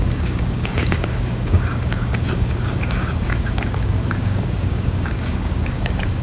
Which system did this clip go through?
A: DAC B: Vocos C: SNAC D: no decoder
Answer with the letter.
A